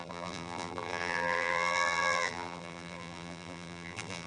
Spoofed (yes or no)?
yes